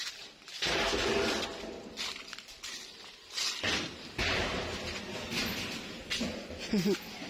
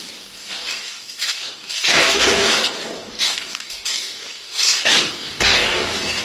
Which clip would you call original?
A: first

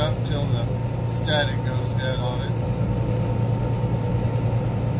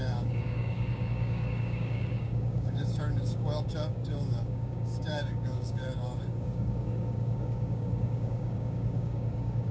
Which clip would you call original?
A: first